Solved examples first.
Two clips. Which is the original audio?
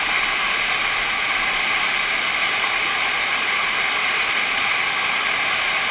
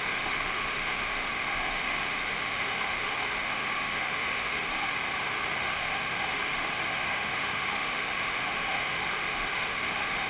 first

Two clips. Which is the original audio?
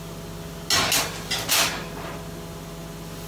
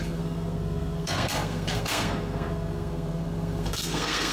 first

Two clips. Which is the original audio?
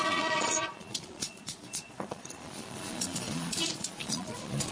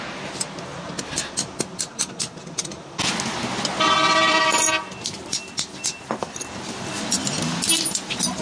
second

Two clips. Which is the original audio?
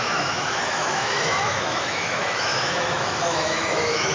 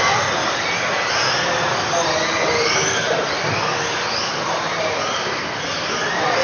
second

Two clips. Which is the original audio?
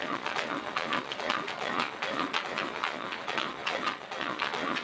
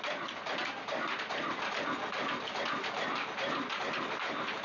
second